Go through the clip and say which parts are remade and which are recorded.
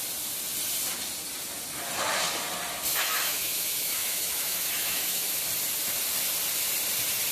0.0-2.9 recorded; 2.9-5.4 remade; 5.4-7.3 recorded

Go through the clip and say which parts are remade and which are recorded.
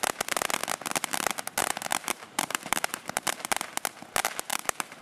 0.0-1.9 recorded; 1.9-3.3 remade; 3.3-4.5 recorded; 4.5-5.0 remade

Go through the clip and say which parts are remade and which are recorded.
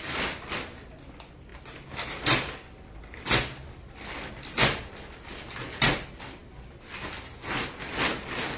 0.0-8.6 recorded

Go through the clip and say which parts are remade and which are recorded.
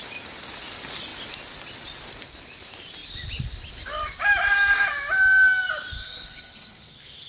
0.0-6.0 recorded; 6.0-7.3 remade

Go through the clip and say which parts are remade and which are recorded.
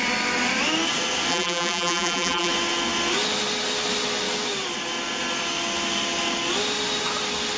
0.0-1.3 recorded; 1.3-2.5 remade; 2.5-7.6 recorded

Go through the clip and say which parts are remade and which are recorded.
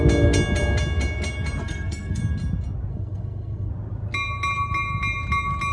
0.0-1.6 recorded; 1.6-2.2 remade; 2.2-2.9 recorded; 2.9-3.7 remade; 3.7-5.7 recorded